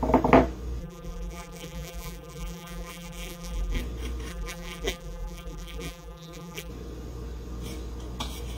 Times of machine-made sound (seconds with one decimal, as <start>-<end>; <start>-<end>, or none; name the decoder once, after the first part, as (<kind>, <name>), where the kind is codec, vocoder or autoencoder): 0.8-3.8 (vocoder, BigVGAN v2); 4.3-6.7

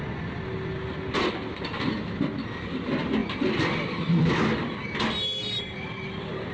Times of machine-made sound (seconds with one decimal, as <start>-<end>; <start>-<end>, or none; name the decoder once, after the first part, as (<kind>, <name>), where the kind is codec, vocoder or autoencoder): 3.2-6.5 (vocoder, BigVGAN v2)

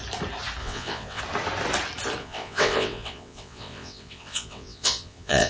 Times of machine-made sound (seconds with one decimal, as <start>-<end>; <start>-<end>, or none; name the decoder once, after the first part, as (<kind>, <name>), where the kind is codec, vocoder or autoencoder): 0.6-1.2 (vocoder, WaveNeXt); 2.2-5.5

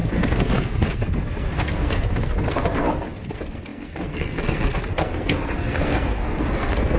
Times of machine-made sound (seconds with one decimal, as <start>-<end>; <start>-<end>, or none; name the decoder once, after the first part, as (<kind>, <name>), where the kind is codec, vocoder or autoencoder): 0.0-7.0 (codec, SNAC)